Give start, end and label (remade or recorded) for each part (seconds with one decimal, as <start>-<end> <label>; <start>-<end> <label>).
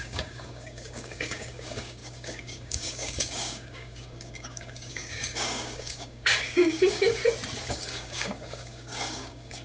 0.0-7.2 remade; 7.2-7.7 recorded; 7.7-9.6 remade